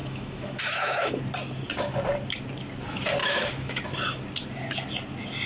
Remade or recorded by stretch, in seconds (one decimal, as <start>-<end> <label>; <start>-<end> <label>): 0.0-1.2 remade; 1.2-3.2 recorded; 3.2-3.8 remade; 3.8-5.5 recorded